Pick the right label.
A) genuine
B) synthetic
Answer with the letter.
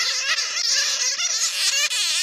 A